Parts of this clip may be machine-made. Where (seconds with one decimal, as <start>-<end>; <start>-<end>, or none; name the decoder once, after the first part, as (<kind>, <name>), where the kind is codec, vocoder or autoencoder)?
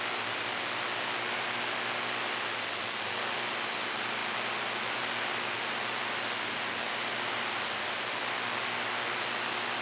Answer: none